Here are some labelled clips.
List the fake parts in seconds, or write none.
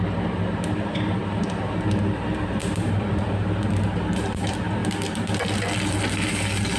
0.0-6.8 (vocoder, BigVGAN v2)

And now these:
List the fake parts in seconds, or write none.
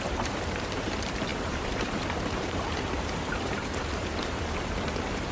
0.0-5.3 (vocoder, BigVGAN v2)